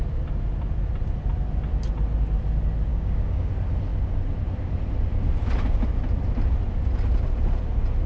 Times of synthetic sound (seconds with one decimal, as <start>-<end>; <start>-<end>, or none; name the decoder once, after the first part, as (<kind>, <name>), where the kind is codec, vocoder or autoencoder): 2.9-3.5 (codec, DAC)